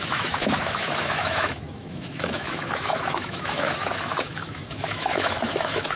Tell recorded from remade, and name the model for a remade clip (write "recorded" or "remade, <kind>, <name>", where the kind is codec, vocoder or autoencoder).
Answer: remade, autoencoder, DAC-VAE